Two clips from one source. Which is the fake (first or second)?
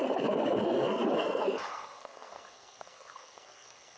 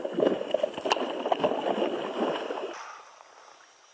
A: first